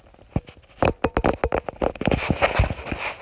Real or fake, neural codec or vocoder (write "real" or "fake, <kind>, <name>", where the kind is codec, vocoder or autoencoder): real